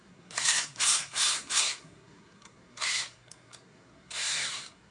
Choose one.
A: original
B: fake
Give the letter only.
B